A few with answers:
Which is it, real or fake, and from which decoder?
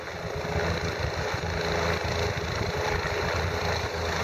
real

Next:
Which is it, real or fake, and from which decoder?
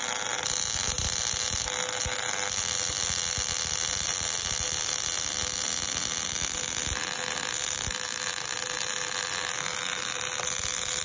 real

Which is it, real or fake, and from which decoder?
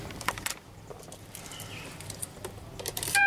fake, vocoder, BigVGAN v2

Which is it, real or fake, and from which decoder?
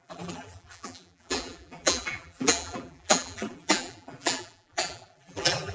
fake, vocoder, BigVGAN v2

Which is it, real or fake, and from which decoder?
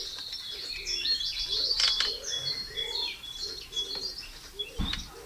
real